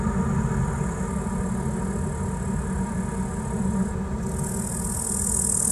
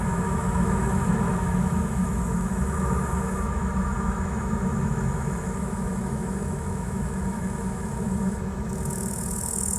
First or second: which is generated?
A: second